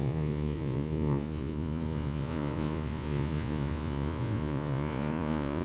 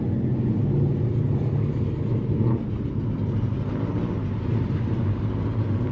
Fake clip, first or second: first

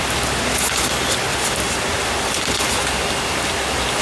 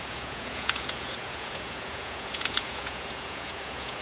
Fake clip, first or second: second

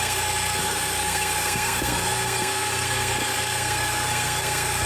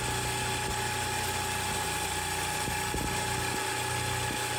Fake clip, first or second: first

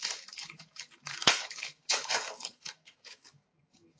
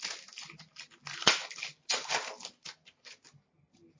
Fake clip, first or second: first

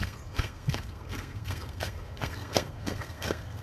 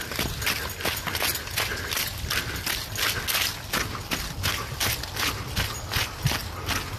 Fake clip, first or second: first